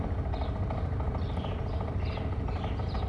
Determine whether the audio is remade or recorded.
recorded